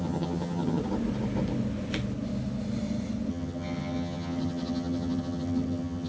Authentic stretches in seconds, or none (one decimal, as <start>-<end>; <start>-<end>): 0.8-3.3